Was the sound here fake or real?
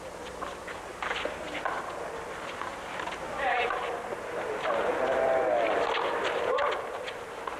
real